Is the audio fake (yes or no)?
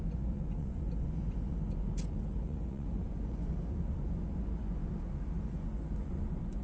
yes